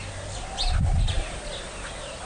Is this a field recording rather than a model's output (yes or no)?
yes